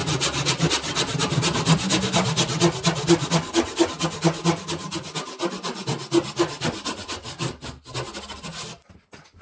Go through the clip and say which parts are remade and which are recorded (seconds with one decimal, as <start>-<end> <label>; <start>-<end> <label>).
0.0-9.4 recorded